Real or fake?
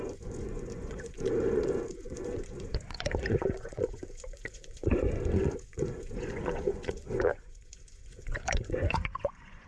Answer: fake